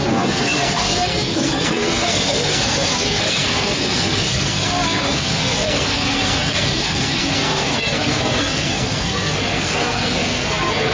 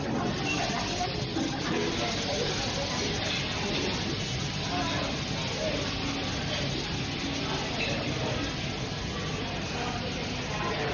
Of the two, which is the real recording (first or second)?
second